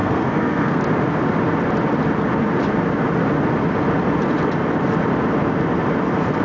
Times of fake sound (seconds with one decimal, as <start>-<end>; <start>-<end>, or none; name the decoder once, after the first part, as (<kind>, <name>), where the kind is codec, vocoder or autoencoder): 0.0-0.8 (codec, SNAC)